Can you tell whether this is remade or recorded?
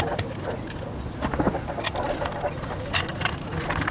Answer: recorded